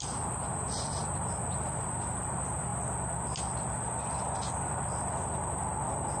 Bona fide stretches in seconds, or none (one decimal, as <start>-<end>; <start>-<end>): 0.0-6.2